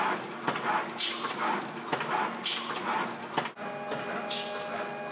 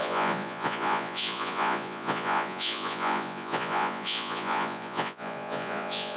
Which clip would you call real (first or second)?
first